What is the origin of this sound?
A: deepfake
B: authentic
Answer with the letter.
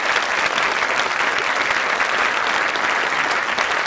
B